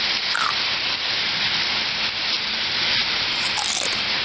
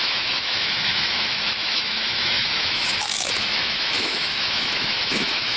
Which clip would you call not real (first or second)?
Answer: second